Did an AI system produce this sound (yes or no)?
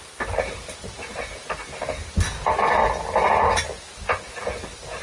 no